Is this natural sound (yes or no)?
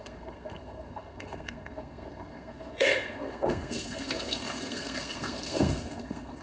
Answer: no